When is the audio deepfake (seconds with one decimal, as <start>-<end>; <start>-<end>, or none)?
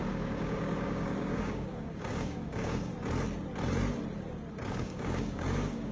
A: 0.0-2.9; 4.7-5.9